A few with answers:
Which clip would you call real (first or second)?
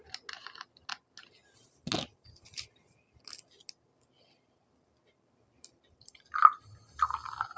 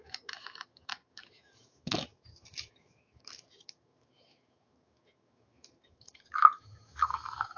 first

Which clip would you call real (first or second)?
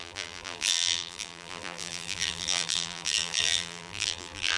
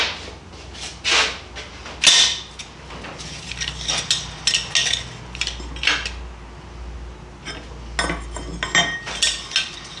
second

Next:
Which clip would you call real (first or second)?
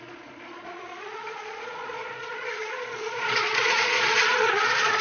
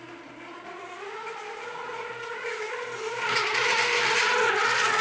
second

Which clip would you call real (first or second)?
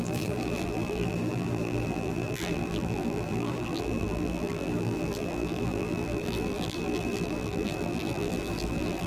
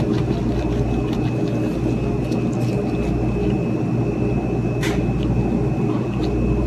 second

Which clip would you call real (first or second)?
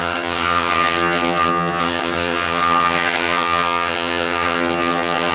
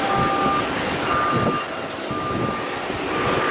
second